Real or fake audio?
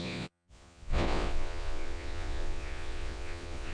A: fake